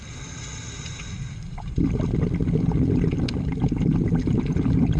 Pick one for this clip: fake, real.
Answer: real